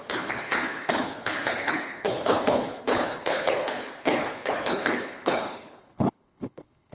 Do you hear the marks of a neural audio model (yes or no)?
yes